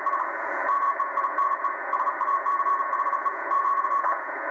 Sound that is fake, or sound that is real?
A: fake